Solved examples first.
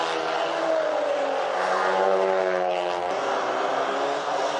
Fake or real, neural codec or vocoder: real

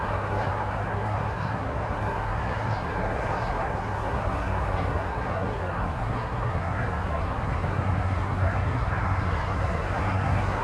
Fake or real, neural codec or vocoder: fake, codec, SNAC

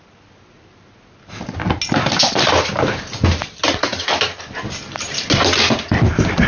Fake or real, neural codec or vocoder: real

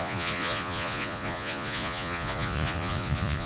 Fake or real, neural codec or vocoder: fake, vocoder, Vocos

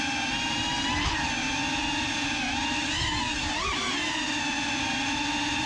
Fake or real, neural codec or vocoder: real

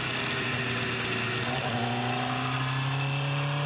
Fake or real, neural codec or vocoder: real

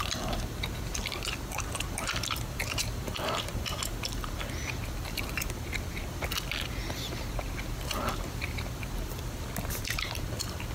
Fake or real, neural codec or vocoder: fake, vocoder, BigVGAN v2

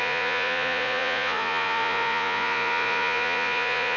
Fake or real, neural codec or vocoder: fake, vocoder, Vocos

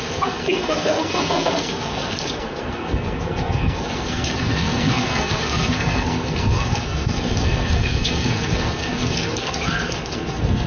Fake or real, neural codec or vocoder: fake, codec, SNAC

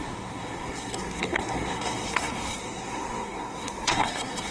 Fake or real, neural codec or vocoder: fake, codec, SNAC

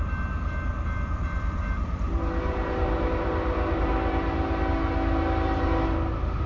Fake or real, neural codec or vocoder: real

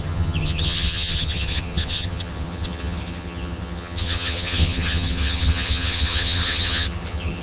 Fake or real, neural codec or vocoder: fake, vocoder, HiFi-GAN